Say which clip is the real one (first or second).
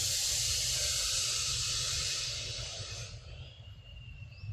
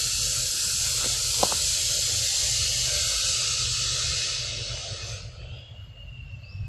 second